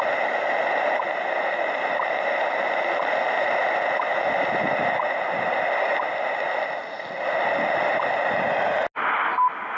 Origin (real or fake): real